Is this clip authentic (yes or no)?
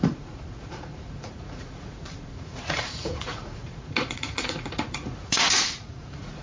no